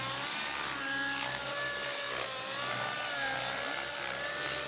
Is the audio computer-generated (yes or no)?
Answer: no